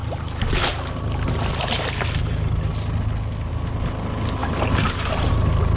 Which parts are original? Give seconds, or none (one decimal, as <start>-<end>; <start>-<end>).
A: 0.0-4.4; 5.3-5.8

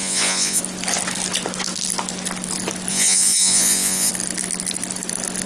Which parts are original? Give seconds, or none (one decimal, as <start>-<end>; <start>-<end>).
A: 0.6-2.9; 4.1-5.5

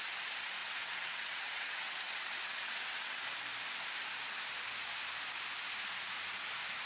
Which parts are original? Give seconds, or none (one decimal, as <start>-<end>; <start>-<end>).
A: 0.0-0.6; 3.2-6.9

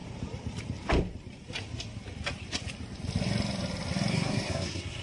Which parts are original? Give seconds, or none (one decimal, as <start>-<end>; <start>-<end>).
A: 0.0-4.1

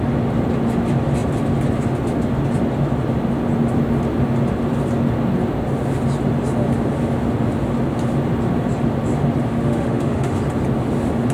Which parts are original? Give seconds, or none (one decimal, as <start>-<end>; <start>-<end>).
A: 0.0-9.5; 10.4-11.3

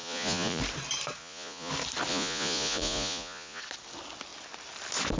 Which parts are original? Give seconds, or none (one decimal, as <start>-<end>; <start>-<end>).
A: 0.6-1.2; 1.7-2.1; 3.6-5.2

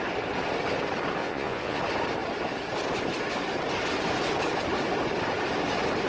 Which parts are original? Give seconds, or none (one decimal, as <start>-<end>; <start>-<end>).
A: 0.0-1.2; 1.8-6.1

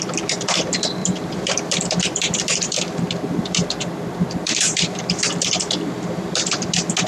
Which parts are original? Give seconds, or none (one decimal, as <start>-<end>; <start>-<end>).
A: 0.0-1.0; 5.3-7.1